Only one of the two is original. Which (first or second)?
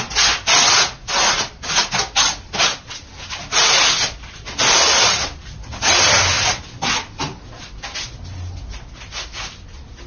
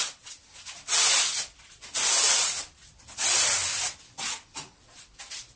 first